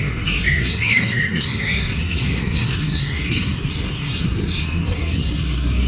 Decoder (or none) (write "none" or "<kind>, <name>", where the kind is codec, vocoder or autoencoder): codec, SNAC